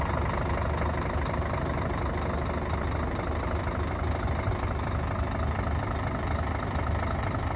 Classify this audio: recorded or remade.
recorded